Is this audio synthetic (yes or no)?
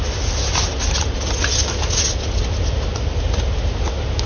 no